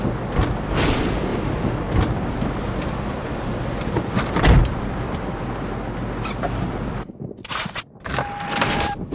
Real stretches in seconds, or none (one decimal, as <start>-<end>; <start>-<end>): 5.4-6.4